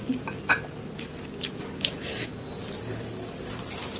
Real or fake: real